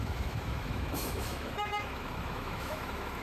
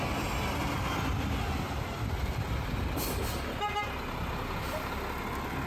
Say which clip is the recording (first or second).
second